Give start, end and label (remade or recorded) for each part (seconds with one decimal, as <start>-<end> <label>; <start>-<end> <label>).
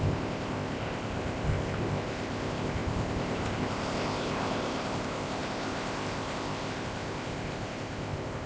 0.0-8.5 remade